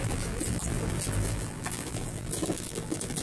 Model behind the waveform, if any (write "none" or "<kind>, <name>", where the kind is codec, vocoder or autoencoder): vocoder, BigVGAN v2